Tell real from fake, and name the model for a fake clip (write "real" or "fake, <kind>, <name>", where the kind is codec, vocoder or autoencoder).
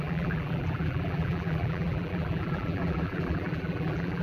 fake, vocoder, BigVGAN v2